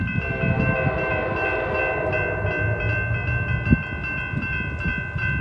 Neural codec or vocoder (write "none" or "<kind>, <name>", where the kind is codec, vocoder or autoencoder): none